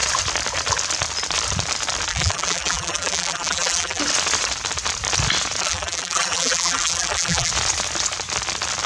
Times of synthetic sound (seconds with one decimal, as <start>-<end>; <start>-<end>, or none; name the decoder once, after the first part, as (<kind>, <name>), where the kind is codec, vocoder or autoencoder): 2.1-4.0 (vocoder, BigVGAN v2); 5.6-7.5